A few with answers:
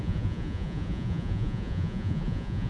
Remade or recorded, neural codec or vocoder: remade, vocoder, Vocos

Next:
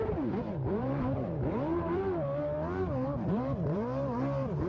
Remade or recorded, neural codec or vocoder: remade, vocoder, BigVGAN v2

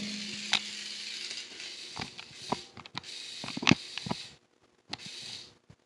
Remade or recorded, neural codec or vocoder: recorded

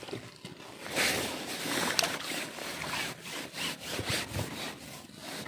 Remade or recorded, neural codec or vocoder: recorded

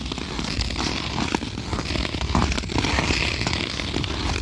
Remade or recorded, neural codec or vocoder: recorded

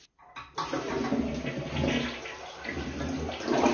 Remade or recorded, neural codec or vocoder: recorded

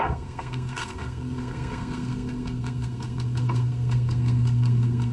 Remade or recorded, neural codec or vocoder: remade, codec, SNAC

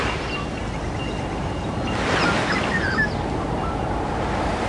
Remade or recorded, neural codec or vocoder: recorded